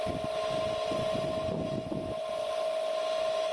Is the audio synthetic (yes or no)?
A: no